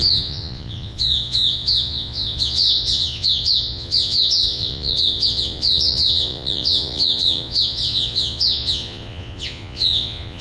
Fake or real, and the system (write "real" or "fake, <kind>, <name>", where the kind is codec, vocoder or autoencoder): fake, vocoder, Vocos